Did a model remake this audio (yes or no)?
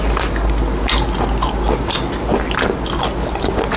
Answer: no